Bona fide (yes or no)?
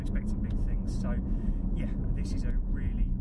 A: yes